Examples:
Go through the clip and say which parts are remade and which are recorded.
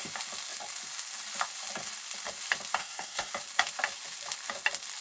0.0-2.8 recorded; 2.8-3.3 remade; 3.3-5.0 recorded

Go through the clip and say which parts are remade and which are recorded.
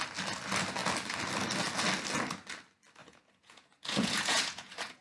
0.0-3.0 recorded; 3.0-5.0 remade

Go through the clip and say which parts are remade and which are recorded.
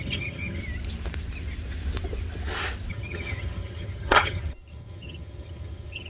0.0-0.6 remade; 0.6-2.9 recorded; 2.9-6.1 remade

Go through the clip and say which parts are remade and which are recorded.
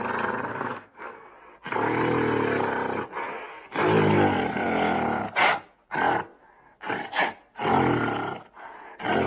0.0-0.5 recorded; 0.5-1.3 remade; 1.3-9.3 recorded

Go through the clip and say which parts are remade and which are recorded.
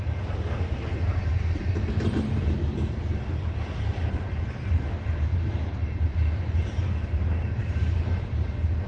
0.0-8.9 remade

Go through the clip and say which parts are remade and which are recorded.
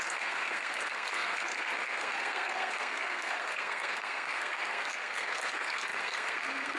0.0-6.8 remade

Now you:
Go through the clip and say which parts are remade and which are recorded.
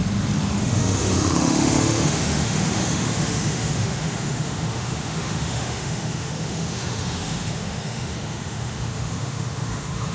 0.0-0.6 recorded; 0.6-10.1 remade